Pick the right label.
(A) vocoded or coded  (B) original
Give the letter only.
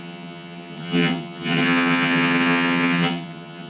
A